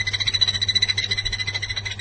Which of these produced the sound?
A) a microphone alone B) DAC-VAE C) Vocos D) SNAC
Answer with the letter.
A